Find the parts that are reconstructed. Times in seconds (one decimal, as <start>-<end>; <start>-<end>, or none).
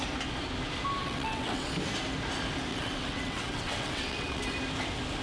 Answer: 1.0-1.7; 2.7-4.4